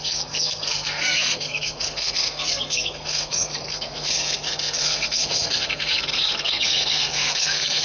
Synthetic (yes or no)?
yes